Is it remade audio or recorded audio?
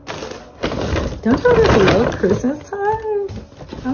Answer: recorded